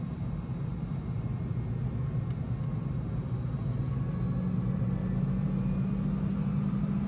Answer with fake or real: real